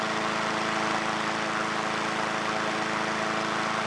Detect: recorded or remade recorded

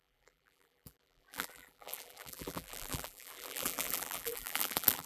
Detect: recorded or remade remade